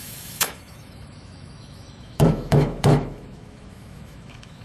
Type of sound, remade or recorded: remade